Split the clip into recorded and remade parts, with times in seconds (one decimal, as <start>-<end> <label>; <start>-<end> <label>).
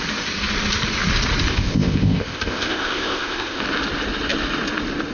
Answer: 0.0-1.5 recorded; 1.5-3.6 remade; 3.6-5.1 recorded